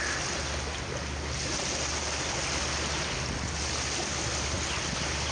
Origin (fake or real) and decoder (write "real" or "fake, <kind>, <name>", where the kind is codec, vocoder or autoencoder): real